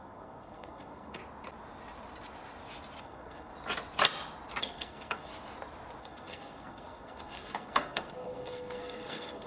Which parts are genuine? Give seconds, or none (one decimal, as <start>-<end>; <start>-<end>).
1.2-3.0; 3.5-4.6; 5.3-6.0